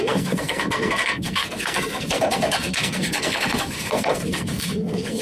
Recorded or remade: remade